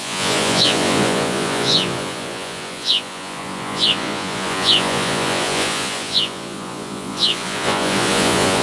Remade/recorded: remade